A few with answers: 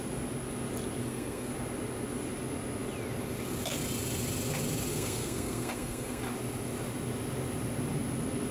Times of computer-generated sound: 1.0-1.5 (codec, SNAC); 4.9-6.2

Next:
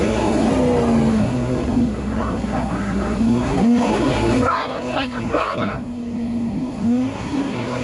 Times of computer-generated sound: 0.0-0.5 (codec, SNAC); 1.1-7.8

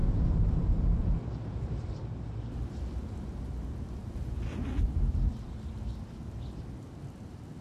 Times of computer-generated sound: none

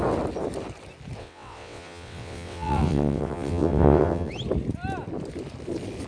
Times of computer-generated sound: 1.2-4.3 (vocoder, WaveNeXt)

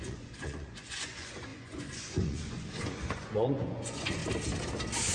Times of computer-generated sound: 0.0-4.2 (vocoder, Vocos)